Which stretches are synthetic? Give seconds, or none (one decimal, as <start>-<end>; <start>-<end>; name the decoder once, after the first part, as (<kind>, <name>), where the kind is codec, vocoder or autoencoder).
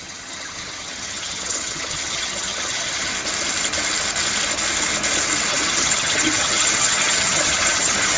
0.0-3.1 (vocoder, HiFi-GAN); 5.5-8.2